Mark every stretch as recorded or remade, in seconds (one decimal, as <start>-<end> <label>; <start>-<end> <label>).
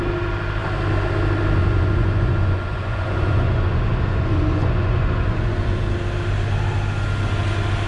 0.0-1.6 recorded; 1.6-5.8 remade; 5.8-7.9 recorded